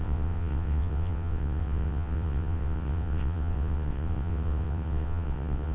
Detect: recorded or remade remade